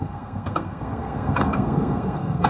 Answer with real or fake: fake